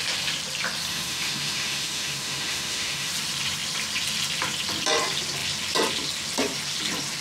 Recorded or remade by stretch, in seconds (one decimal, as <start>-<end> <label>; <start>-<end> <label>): 0.0-0.9 recorded; 0.9-3.1 remade; 3.1-7.2 recorded